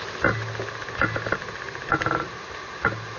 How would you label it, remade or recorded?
recorded